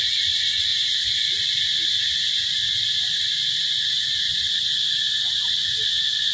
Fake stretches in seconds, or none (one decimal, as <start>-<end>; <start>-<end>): none